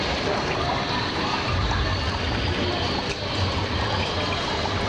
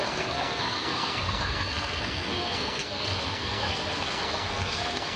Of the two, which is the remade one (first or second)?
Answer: second